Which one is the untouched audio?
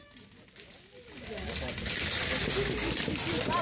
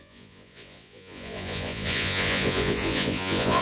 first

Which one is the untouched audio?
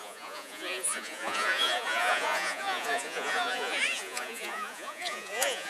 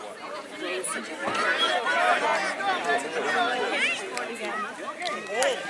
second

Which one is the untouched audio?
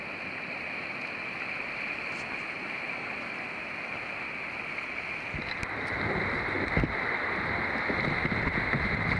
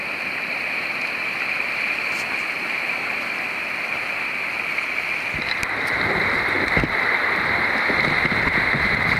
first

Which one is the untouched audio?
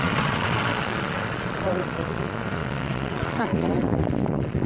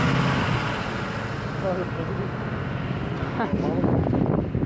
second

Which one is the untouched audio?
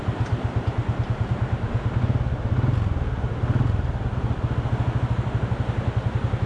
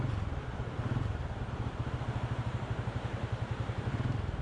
first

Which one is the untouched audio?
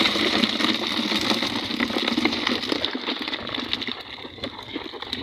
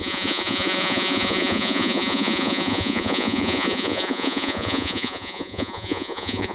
first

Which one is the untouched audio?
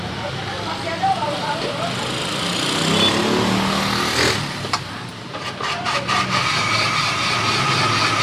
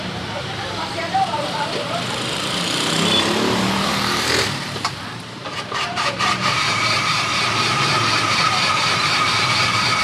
first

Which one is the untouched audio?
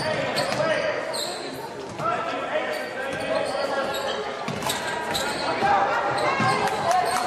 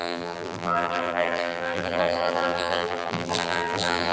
first